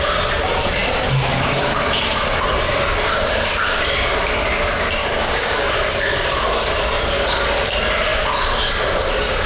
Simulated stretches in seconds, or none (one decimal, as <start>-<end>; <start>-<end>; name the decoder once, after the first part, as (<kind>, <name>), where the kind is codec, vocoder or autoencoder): 5.0-5.5 (codec, DAC)